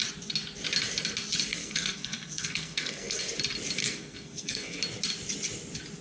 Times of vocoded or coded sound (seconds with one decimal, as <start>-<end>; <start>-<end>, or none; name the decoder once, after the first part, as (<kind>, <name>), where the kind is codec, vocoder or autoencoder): 1.5-3.2 (codec, SNAC); 3.8-4.8